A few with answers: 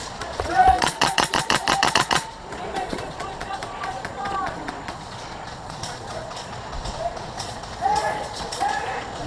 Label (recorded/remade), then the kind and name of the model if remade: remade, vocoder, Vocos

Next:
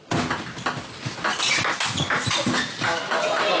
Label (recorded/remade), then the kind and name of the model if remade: recorded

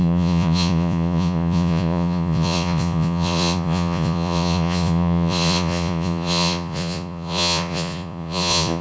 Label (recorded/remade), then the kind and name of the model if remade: remade, vocoder, Vocos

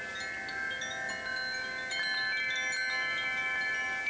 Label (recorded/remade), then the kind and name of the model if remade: recorded